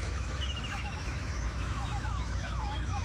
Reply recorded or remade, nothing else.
remade